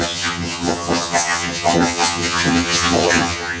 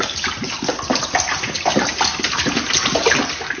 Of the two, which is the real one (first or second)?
second